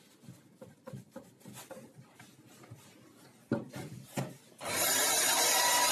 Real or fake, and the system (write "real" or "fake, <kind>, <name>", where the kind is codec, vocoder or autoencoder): fake, vocoder, BigVGAN v2